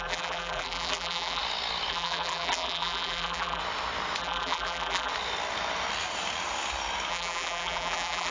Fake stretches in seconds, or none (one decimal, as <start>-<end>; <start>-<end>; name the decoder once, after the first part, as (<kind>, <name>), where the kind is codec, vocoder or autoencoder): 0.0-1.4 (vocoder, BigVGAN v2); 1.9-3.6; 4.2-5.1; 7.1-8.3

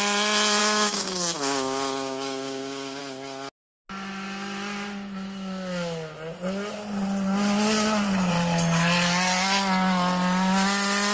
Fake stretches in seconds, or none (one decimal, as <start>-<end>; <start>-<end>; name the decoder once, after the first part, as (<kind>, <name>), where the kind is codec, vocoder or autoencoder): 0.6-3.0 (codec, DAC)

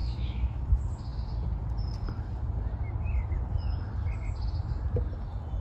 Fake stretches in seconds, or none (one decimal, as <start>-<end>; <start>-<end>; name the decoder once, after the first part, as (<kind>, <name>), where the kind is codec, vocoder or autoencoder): 0.0-0.6 (autoencoder, DAC-VAE)

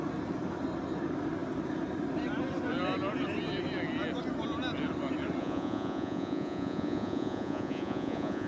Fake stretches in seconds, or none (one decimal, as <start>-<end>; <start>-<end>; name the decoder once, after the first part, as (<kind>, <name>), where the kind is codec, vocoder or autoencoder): 5.4-8.5 (vocoder, Vocos)